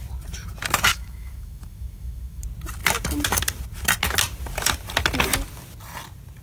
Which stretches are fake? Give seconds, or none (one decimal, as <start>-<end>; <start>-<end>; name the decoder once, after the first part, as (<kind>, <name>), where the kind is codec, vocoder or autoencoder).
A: 0.9-2.4 (autoencoder, DAC-VAE)